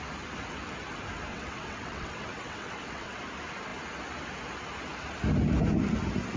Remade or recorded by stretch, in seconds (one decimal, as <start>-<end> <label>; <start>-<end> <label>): 0.0-1.3 recorded; 1.3-3.2 remade; 3.2-6.4 recorded